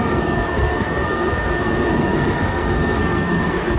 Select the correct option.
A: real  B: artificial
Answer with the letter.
B